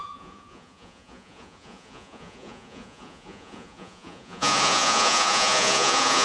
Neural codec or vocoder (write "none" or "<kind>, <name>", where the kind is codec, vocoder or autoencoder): vocoder, Vocos